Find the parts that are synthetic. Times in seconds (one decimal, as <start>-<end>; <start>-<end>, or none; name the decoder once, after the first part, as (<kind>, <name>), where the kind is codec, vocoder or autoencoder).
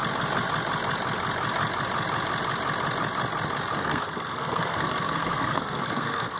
3.8-6.4 (codec, SNAC)